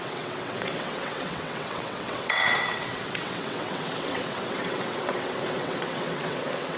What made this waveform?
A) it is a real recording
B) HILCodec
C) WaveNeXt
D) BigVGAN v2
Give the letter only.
C